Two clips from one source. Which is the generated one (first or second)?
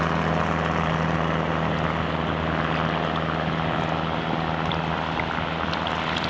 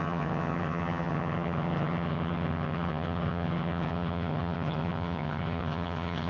second